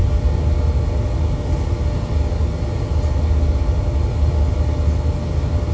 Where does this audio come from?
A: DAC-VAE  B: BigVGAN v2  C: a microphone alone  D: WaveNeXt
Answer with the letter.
C